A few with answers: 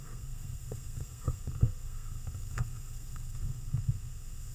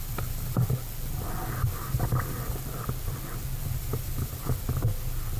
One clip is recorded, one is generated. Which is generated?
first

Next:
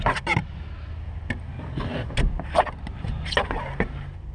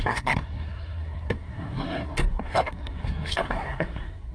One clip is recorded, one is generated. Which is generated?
second